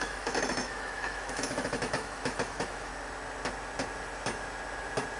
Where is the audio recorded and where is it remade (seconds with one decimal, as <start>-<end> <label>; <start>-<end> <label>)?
0.0-2.9 remade; 2.9-5.2 recorded